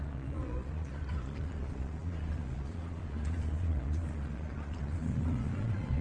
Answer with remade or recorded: remade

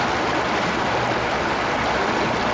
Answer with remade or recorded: recorded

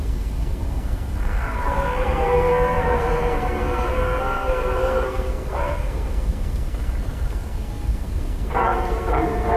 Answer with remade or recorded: remade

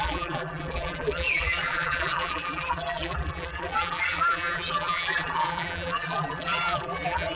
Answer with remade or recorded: remade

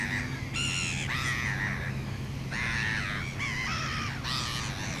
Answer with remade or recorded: recorded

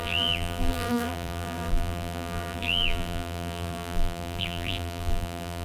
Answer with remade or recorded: remade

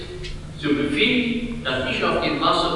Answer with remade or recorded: recorded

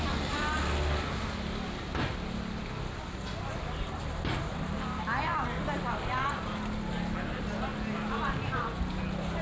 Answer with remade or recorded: recorded